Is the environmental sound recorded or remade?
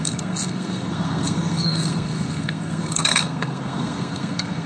remade